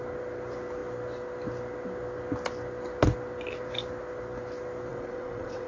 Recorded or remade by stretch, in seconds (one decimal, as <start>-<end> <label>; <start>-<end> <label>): 0.0-4.9 recorded; 4.9-5.7 remade